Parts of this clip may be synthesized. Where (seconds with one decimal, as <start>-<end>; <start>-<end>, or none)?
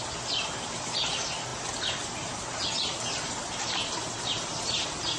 none